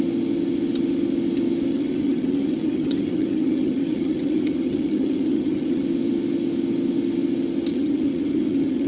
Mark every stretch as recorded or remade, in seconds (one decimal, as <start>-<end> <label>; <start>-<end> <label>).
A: 0.0-1.7 recorded; 1.7-5.8 remade; 5.8-7.7 recorded; 7.7-8.9 remade